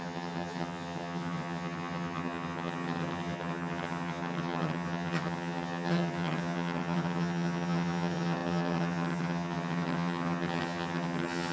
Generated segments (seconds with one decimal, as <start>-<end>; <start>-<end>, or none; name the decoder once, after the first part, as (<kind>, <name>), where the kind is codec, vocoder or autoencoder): 0.0-11.5 (vocoder, HiFi-GAN)